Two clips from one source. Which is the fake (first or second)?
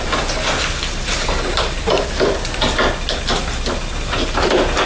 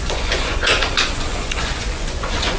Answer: second